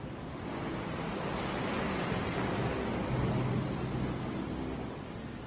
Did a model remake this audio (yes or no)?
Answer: no